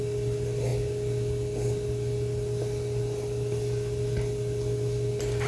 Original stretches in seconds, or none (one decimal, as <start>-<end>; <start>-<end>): 0.0-5.5